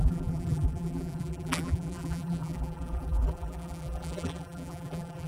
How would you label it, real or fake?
fake